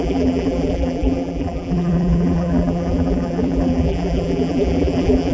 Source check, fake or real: fake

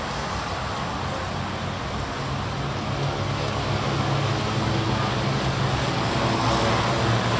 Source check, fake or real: real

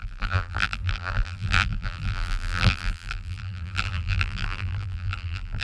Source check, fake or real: fake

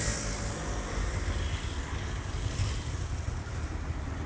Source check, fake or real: real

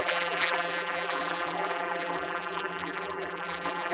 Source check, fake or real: fake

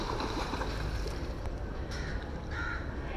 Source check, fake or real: fake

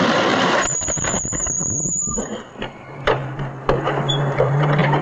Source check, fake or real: fake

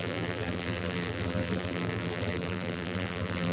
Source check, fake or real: fake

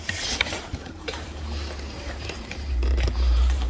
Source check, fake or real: fake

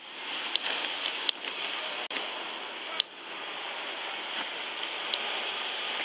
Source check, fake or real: real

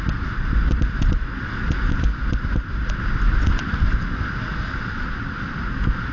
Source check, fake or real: real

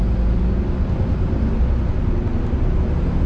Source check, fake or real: real